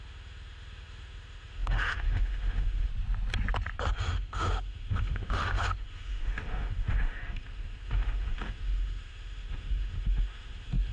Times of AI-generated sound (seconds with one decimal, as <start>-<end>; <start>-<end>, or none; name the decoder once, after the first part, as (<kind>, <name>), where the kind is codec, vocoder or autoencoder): 0.0-2.9 (autoencoder, DAC-VAE); 3.9-10.9

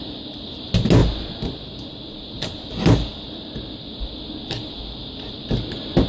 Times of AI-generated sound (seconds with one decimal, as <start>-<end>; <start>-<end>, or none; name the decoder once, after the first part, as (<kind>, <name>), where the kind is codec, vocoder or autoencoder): none

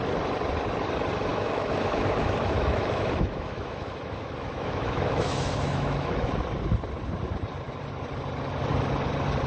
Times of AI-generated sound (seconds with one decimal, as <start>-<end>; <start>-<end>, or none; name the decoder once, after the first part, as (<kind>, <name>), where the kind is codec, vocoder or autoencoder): 1.3-6.3 (autoencoder, DAC-VAE)

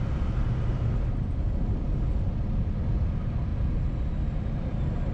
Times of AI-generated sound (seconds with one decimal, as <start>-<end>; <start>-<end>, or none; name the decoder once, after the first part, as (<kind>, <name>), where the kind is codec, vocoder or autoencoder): none

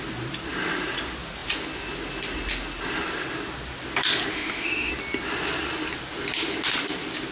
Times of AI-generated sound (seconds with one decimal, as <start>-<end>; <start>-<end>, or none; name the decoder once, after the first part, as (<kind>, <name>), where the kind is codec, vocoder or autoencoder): 4.3-4.9 (autoencoder, DAC-VAE)

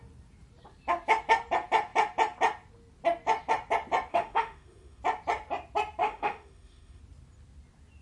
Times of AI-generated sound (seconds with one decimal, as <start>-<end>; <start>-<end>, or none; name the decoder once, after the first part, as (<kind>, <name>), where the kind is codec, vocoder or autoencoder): 4.1-5.0 (autoencoder, DAC-VAE); 6.0-7.0

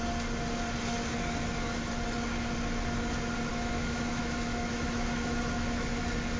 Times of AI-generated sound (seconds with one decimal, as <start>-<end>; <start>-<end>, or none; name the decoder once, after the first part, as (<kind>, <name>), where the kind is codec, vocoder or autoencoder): 3.5-6.0 (autoencoder, DAC-VAE)

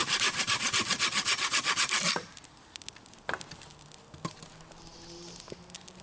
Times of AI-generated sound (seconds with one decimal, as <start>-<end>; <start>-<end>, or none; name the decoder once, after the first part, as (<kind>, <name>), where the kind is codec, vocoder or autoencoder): none